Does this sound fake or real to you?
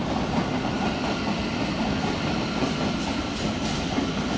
real